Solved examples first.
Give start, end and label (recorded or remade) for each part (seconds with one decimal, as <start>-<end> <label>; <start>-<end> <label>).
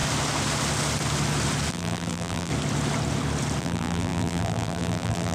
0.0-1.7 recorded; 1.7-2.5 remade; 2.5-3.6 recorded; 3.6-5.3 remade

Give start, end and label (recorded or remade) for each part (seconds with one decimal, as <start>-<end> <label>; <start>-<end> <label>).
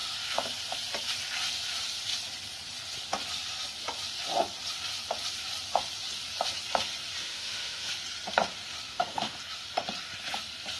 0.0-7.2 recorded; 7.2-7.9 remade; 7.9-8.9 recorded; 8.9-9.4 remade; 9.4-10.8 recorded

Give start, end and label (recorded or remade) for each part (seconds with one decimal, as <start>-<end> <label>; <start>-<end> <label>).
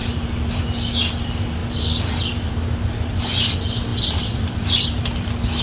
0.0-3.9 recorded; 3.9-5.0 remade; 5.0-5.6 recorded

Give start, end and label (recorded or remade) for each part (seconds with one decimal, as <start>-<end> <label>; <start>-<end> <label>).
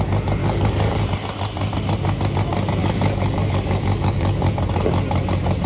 0.0-0.4 recorded; 0.4-1.0 remade; 1.0-2.8 recorded; 2.8-4.5 remade; 4.5-5.7 recorded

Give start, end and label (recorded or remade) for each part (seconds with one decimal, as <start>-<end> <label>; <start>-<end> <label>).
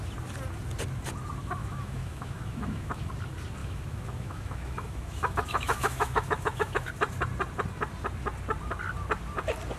0.0-1.6 recorded; 1.6-3.1 remade; 3.1-3.6 recorded; 3.6-6.9 remade; 6.9-9.8 recorded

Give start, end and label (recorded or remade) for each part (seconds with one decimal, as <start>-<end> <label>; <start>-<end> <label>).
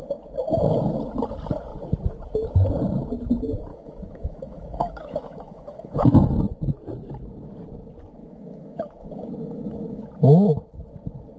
0.0-3.7 recorded; 3.7-6.4 remade; 6.4-8.2 recorded; 8.2-10.1 remade; 10.1-11.4 recorded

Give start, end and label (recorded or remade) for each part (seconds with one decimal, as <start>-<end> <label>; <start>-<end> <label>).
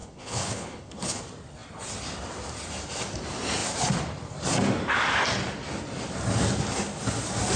0.0-1.2 remade; 1.2-7.6 recorded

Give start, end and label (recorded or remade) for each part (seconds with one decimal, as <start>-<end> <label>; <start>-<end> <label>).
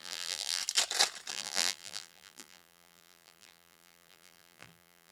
0.0-0.6 remade; 0.6-1.3 recorded; 1.3-5.1 remade